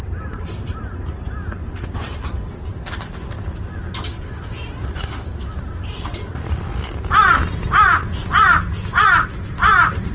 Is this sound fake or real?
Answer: real